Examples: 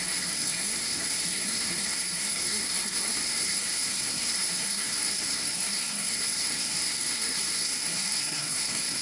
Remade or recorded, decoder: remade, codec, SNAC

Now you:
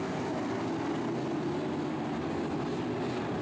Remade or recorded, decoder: recorded